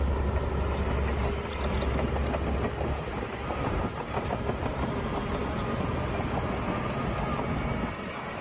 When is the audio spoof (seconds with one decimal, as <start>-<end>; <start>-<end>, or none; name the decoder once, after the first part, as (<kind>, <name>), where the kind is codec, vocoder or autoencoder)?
none